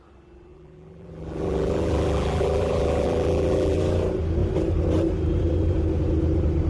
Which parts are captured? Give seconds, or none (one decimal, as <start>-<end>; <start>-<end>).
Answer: 0.0-0.5; 3.8-6.7

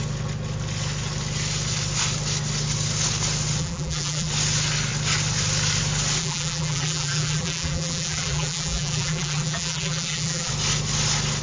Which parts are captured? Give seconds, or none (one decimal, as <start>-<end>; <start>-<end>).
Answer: 0.0-3.6; 4.3-6.2; 10.5-11.4

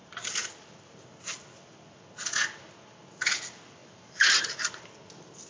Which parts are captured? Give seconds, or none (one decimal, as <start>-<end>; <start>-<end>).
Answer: 1.4-3.8; 4.8-5.5

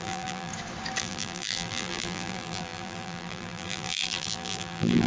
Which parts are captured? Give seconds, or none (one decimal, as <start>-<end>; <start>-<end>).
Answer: 0.5-1.0

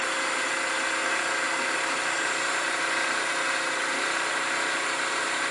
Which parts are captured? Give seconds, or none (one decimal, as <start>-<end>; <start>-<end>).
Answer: 0.0-1.0; 4.3-5.5

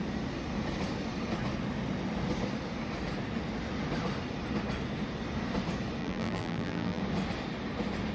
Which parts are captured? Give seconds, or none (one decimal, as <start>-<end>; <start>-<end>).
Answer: 0.0-6.0; 7.0-8.1

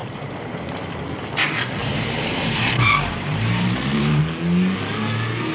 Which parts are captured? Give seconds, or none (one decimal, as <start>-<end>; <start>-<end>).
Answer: 1.0-1.8; 4.2-5.5